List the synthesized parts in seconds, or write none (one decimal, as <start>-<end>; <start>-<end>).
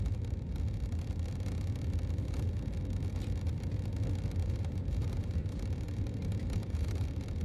4.4-6.9